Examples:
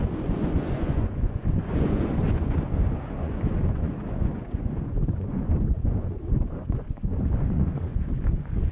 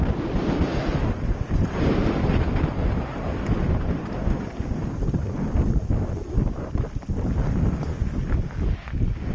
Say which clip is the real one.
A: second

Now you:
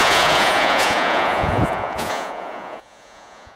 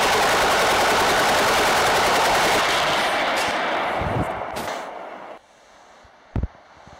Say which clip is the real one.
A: second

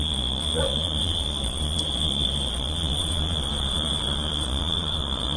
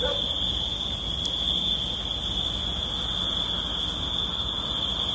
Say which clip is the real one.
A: second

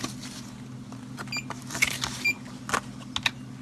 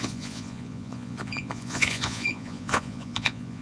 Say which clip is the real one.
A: first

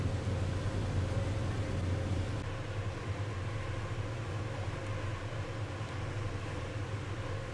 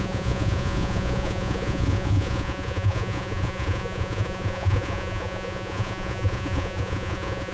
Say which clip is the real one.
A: first